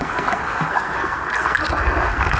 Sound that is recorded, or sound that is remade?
remade